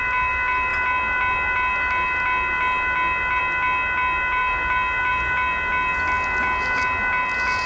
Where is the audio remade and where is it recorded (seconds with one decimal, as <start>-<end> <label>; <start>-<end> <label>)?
0.0-7.7 recorded